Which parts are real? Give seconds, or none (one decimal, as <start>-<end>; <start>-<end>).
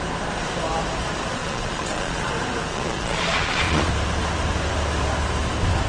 0.0-1.4; 2.3-2.7; 3.9-5.9